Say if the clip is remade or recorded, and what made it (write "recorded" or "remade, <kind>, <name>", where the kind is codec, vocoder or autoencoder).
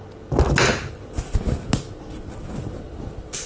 recorded